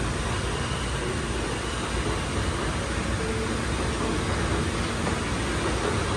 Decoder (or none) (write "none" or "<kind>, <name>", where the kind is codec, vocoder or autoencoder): none